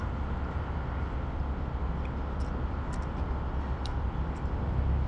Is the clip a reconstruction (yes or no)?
no